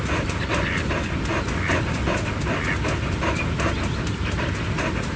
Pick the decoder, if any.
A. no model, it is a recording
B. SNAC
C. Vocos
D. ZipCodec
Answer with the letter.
A